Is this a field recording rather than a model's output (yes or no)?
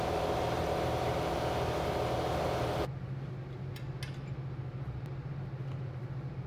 yes